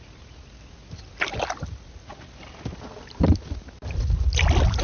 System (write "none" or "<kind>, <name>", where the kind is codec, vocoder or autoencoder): none